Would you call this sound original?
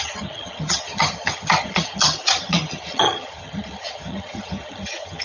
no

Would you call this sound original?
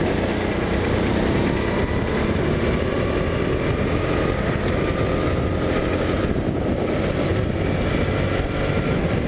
yes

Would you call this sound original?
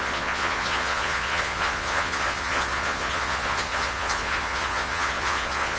no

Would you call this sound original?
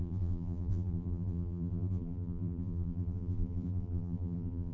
no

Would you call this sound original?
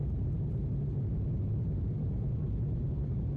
no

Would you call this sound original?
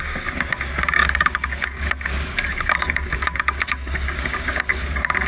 no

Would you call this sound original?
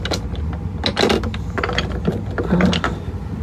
yes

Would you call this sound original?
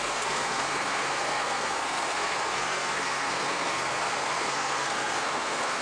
no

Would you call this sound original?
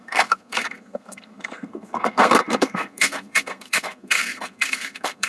no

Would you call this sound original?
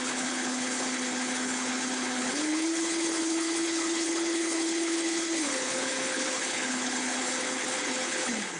no